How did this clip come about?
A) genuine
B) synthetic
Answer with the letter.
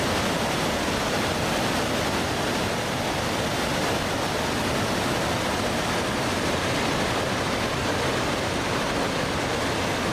A